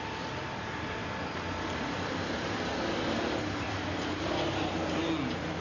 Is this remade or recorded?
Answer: recorded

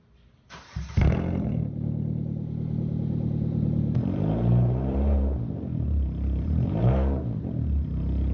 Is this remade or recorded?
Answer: remade